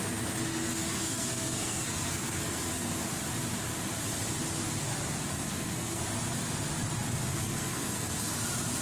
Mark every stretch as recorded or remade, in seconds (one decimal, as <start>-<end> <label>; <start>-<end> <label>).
0.0-0.5 recorded; 0.5-2.9 remade; 2.9-5.3 recorded; 5.3-6.0 remade; 6.0-7.3 recorded; 7.3-8.4 remade; 8.4-8.8 recorded